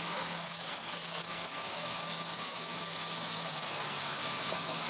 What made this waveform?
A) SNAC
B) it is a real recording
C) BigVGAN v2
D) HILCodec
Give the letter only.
A